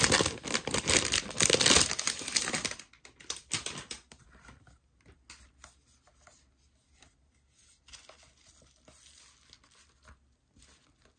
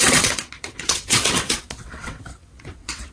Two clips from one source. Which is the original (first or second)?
first